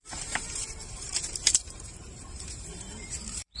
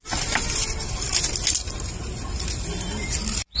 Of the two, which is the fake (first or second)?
first